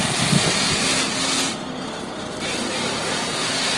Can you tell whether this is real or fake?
real